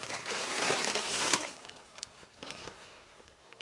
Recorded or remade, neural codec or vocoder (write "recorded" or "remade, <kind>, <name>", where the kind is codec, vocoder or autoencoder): remade, codec, SNAC